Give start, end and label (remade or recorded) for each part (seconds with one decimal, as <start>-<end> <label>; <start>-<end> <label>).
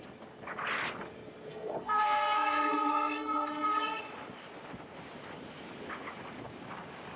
0.0-1.5 recorded; 1.5-4.0 remade; 4.0-7.2 recorded